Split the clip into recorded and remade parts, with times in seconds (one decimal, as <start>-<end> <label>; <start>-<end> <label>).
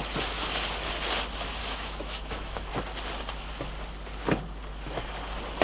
0.0-1.6 recorded; 1.6-2.7 remade; 2.7-5.6 recorded